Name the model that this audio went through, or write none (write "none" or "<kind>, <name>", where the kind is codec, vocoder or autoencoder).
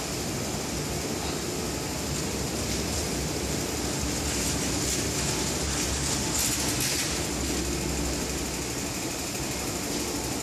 none